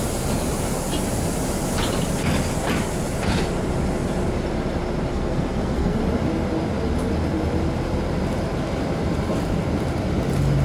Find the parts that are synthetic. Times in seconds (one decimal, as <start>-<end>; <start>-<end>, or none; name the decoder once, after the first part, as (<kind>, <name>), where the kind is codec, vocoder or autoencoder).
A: 5.1-6.0 (codec, SNAC)